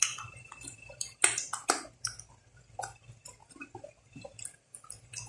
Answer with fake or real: fake